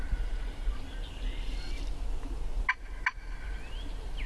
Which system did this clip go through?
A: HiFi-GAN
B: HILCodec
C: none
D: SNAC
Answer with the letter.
C